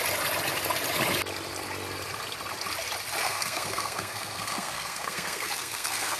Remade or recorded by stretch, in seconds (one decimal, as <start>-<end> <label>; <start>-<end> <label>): 0.0-3.2 recorded; 3.2-6.2 remade